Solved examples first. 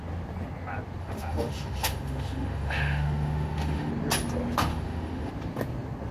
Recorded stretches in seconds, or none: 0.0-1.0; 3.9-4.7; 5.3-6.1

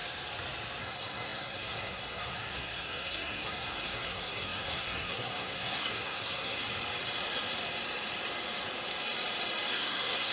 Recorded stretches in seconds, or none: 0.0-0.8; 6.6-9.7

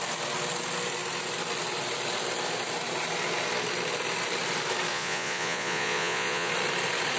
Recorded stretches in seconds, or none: 0.0-4.9; 6.5-7.2

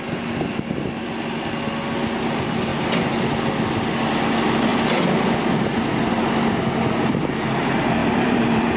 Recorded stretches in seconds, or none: 0.0-4.7; 5.7-8.0

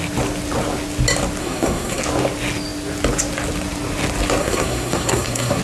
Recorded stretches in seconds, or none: 0.0-1.4; 2.0-4.4

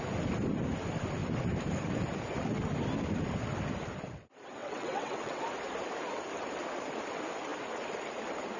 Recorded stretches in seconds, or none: 0.0-4.6; 5.4-8.6

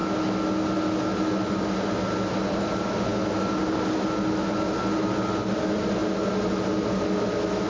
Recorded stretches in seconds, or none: 0.0-7.7

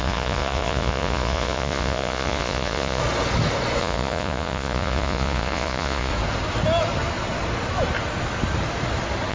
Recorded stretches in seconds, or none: 3.0-3.8; 6.1-9.3